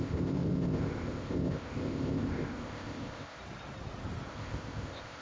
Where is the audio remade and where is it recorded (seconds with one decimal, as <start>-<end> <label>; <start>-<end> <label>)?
0.0-3.4 remade; 3.4-4.3 recorded; 4.3-5.2 remade